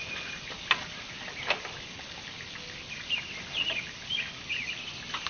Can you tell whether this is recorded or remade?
recorded